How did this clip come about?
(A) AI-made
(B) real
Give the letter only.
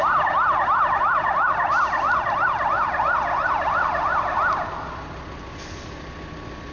B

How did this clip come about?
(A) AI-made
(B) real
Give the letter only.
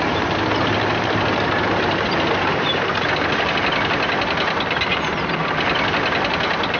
B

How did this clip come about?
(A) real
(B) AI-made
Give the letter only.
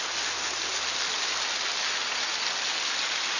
A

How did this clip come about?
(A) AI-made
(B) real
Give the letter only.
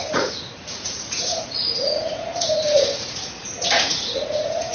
A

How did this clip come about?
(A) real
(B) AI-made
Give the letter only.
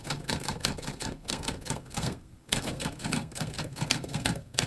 B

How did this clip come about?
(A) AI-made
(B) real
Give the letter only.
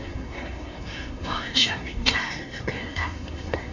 A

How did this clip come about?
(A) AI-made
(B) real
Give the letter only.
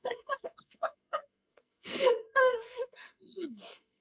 A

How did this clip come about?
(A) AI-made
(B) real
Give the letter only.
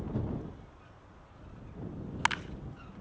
B